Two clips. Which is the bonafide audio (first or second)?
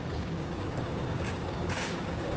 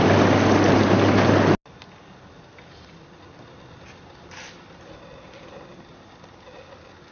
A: second